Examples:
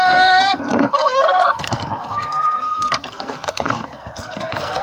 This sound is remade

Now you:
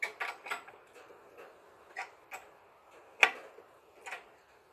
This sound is recorded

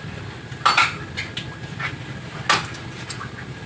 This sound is recorded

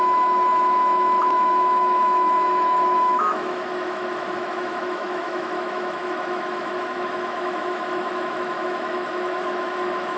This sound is remade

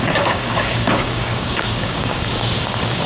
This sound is remade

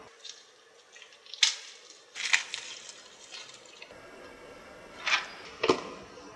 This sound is recorded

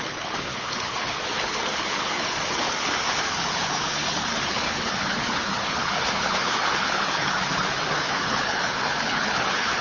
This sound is remade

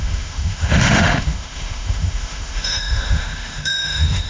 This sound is remade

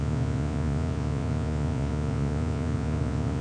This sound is remade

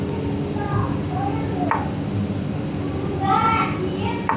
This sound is recorded